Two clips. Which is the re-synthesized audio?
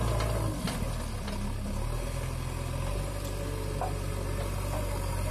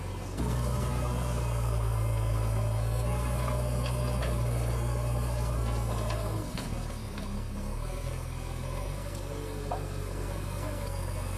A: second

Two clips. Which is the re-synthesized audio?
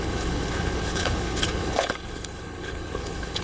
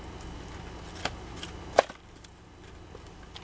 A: first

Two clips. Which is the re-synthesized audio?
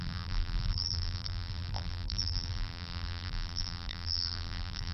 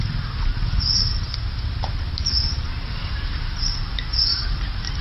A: first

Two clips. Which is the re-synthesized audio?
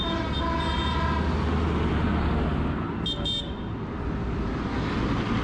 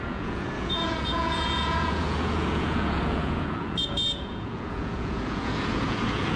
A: second